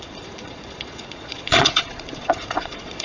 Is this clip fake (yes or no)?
yes